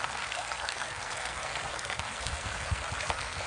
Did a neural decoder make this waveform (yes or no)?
yes